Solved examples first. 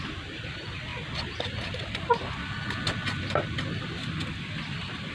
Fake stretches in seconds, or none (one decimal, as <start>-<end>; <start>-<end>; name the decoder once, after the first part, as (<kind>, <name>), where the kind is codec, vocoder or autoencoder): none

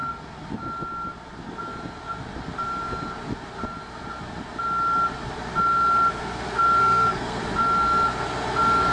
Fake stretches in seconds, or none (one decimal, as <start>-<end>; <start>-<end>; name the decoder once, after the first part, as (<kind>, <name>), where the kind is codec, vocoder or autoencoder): 6.8-7.4 (codec, SNAC)

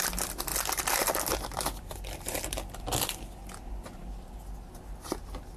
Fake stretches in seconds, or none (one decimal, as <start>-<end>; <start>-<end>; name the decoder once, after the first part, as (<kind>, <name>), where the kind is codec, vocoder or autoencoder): none

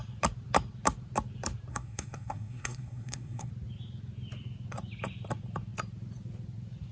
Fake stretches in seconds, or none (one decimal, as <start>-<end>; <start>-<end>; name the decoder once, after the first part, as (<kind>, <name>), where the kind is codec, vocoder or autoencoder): 1.7-3.5 (codec, SNAC)

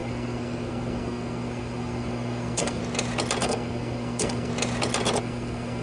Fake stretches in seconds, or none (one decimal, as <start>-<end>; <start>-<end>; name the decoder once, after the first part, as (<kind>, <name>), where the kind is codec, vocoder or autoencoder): 0.0-2.8 (codec, SNAC); 3.4-4.5; 5.2-5.8

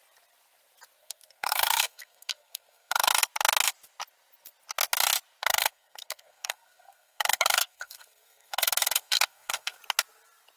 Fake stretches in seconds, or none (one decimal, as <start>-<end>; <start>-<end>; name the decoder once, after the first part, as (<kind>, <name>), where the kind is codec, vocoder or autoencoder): 1.0-3.1 (codec, SNAC); 5.4-9.8